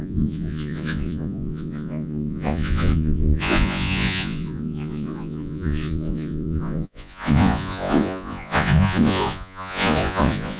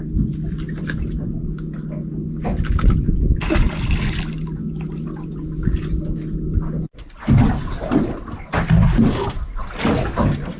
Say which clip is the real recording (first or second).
second